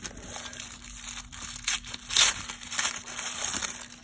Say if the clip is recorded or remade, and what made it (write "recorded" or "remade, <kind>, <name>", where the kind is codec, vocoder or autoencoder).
recorded